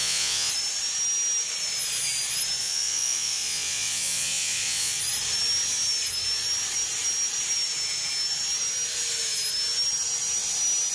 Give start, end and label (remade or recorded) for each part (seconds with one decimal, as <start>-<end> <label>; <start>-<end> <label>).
0.0-0.5 remade; 0.5-2.6 recorded; 2.6-5.0 remade; 5.0-10.9 recorded